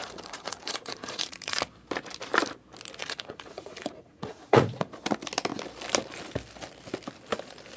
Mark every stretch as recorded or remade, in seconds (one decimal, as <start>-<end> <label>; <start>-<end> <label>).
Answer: 0.0-1.6 remade; 1.6-3.0 recorded; 3.0-4.9 remade; 4.9-7.8 recorded